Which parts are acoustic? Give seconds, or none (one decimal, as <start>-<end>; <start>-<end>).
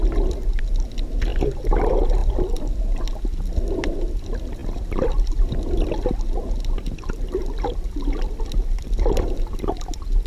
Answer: 0.0-4.6; 5.5-7.4; 9.7-10.3